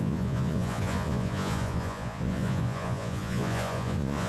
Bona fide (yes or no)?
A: no